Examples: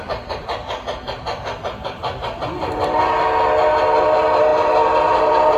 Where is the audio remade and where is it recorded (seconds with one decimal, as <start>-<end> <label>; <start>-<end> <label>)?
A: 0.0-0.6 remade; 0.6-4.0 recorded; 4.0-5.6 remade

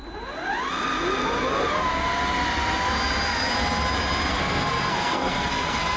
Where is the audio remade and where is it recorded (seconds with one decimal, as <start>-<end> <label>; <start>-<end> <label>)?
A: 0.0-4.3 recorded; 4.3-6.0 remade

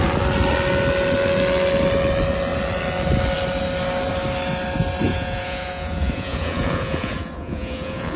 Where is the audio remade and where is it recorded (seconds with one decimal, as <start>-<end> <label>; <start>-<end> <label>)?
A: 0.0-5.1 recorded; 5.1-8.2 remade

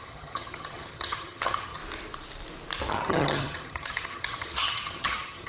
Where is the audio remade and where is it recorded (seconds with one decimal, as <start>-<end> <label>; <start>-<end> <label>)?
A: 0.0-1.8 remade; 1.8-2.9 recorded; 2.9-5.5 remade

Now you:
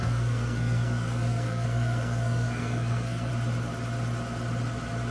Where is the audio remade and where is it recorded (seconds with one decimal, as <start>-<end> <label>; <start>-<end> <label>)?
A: 0.0-3.3 remade; 3.3-5.1 recorded

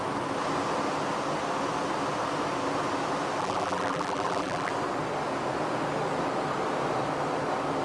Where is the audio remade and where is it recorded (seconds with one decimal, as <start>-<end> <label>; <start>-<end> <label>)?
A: 0.0-3.4 recorded; 3.4-4.7 remade; 4.7-7.8 recorded

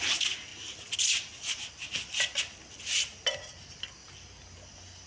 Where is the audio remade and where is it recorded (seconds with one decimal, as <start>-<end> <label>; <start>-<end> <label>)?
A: 0.0-5.1 recorded

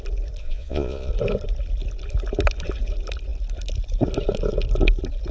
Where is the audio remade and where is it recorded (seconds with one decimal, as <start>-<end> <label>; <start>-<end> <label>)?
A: 0.0-0.4 recorded; 0.4-1.1 remade; 1.1-5.3 recorded